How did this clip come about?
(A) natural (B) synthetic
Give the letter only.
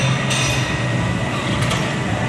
A